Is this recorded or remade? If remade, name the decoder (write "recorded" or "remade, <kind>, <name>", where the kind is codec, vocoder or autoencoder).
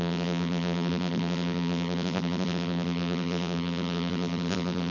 remade, vocoder, BigVGAN v2